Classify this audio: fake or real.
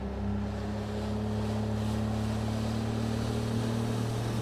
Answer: real